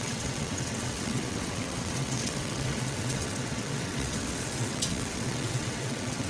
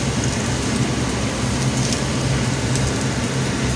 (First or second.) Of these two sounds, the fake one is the first